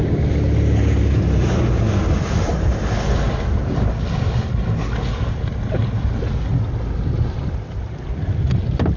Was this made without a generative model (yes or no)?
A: yes